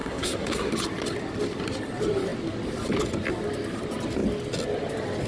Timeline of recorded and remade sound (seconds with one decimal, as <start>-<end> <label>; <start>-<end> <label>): 0.0-0.7 remade; 0.7-5.3 recorded